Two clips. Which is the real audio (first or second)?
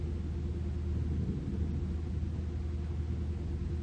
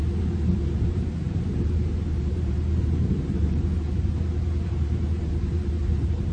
first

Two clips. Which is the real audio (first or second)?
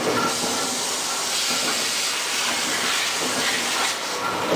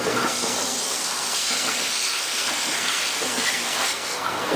first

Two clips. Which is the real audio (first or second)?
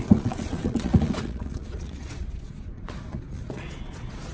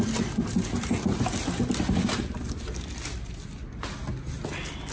second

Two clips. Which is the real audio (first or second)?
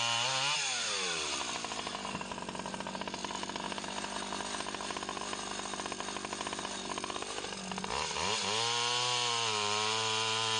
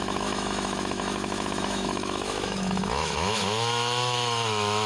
first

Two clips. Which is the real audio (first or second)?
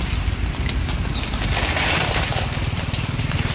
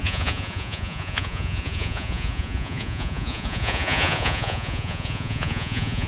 first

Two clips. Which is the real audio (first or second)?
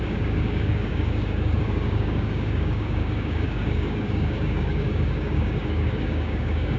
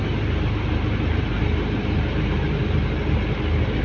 second